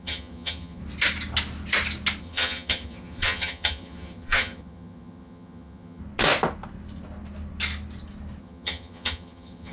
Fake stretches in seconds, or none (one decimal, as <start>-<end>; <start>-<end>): 0.0-0.8; 2.2-6.0; 8.4-9.7